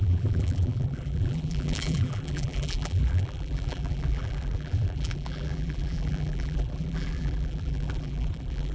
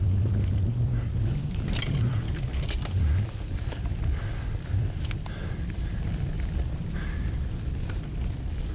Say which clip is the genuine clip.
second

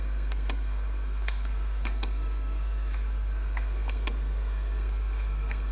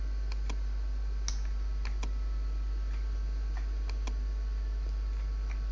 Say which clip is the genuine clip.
second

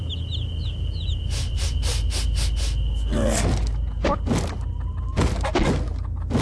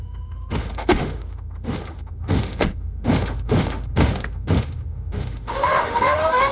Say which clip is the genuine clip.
first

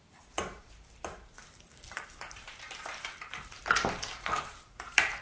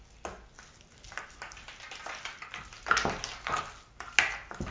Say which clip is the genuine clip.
second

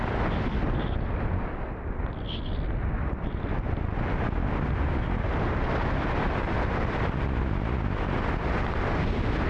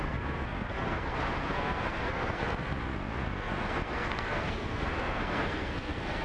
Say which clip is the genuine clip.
first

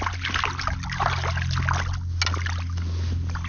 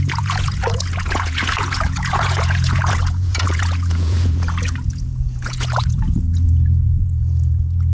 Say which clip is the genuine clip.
first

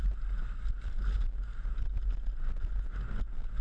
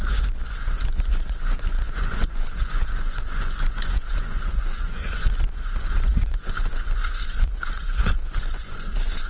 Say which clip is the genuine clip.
first